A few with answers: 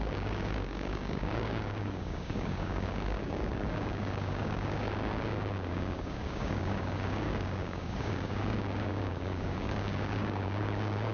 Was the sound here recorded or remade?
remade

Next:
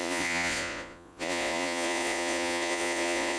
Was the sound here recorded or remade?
remade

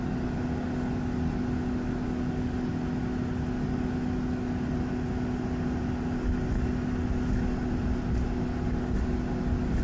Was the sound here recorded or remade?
recorded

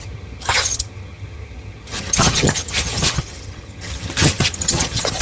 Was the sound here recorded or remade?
remade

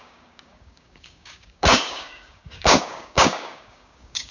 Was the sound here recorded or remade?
remade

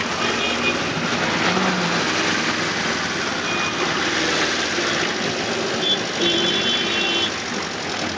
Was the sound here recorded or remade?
recorded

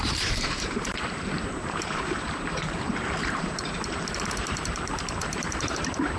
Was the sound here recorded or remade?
remade